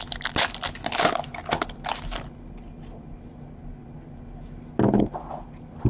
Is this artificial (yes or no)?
no